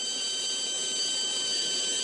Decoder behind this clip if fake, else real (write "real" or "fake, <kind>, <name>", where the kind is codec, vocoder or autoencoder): real